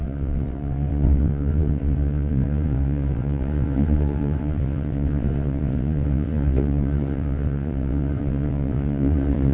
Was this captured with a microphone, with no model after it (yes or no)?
no